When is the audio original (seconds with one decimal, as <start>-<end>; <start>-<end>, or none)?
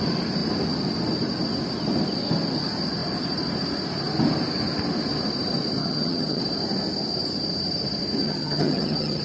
0.0-5.8; 6.4-8.2